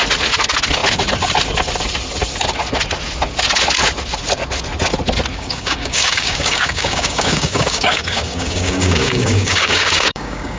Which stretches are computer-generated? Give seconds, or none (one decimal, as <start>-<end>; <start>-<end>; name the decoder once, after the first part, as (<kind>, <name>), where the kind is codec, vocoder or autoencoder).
5.3-10.6 (codec, DAC)